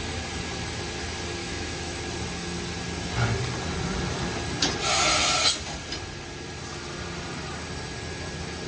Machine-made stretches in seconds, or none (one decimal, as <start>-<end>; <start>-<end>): 1.4-2.0